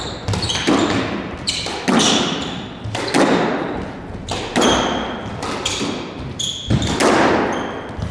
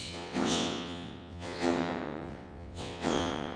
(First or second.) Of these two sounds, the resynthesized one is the second